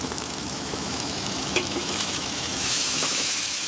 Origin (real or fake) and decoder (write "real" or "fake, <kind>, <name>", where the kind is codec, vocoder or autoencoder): fake, autoencoder, DAC-VAE